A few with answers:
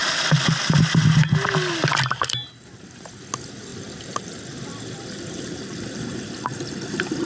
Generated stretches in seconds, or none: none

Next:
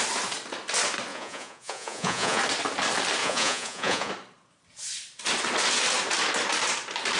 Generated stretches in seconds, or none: 1.1-2.4; 3.2-4.1

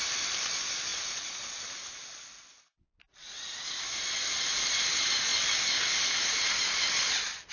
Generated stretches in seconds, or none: 3.2-3.8

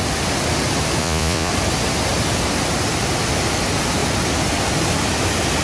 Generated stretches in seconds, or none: 1.0-1.5

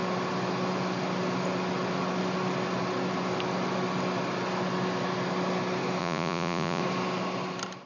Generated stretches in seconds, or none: 6.0-6.8